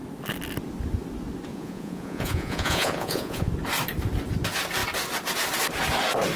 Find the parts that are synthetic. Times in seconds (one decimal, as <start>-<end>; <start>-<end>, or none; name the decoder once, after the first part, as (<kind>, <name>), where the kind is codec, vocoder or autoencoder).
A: 1.5-3.5 (vocoder, Vocos)